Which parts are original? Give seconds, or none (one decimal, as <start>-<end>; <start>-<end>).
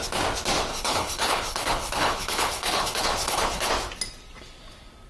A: 0.0-0.7; 3.7-5.1